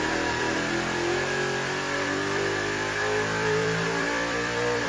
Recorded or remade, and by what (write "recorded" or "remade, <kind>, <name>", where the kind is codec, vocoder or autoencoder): remade, vocoder, BigVGAN v2